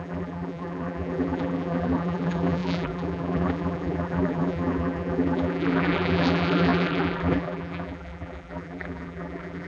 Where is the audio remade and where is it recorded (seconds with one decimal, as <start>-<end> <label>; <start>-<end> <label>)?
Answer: 0.0-9.7 remade

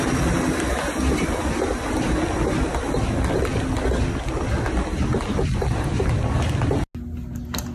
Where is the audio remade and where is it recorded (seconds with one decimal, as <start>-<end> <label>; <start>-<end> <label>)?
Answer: 0.0-7.7 recorded

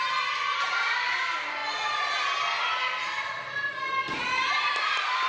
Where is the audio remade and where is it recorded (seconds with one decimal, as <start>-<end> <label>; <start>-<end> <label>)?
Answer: 0.0-1.6 remade; 1.6-2.8 recorded; 2.8-5.3 remade

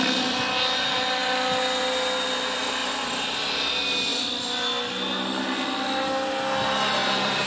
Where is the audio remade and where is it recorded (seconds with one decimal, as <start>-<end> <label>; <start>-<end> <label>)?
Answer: 0.0-7.0 recorded; 7.0-7.5 remade

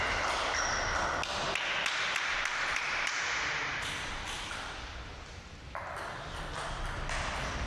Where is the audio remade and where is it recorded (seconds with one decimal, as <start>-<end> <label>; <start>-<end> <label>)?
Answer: 0.0-2.5 recorded; 2.5-6.3 remade; 6.3-7.7 recorded

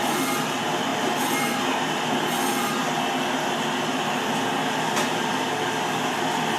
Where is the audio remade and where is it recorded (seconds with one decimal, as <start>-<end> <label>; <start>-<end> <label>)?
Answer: 0.0-6.6 recorded